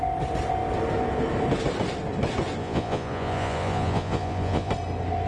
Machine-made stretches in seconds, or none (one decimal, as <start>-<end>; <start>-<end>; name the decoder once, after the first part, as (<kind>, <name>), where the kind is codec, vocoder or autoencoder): 2.6-4.7 (vocoder, Vocos)